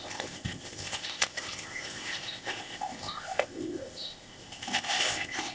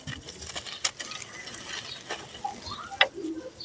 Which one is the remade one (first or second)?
first